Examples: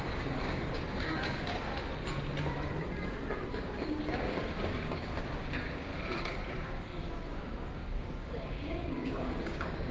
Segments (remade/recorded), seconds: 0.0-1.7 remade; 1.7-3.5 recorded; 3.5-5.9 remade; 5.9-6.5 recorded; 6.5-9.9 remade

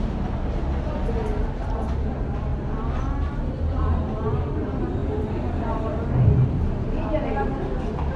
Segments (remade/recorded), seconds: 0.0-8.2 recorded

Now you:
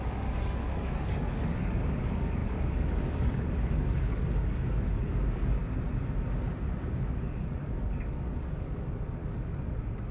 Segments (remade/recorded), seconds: 0.0-5.6 remade; 5.6-6.8 recorded; 6.8-10.1 remade